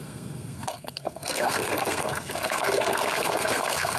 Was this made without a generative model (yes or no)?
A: no